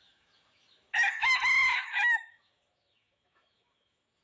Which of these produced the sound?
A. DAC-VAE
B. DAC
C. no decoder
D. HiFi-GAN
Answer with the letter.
A